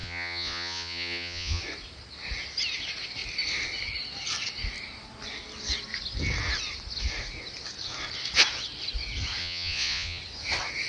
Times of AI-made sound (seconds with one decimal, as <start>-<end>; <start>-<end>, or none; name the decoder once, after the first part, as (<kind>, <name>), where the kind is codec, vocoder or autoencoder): 0.0-1.6 (vocoder, Vocos); 9.4-10.2